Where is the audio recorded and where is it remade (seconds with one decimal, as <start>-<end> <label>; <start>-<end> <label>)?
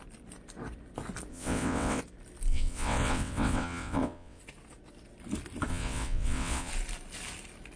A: 0.0-1.3 recorded; 1.3-2.0 remade; 2.0-2.5 recorded; 2.5-4.4 remade; 4.4-5.7 recorded; 5.7-6.7 remade; 6.7-7.8 recorded